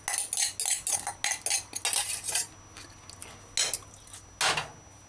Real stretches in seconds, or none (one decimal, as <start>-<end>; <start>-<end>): 0.0-5.1